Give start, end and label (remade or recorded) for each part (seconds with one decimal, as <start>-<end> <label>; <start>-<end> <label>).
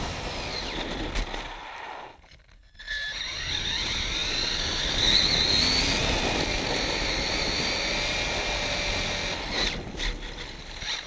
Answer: 0.0-11.1 recorded